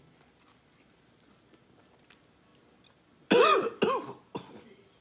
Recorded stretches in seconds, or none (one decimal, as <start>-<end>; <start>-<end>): 0.0-5.0